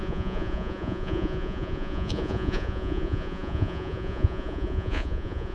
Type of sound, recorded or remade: remade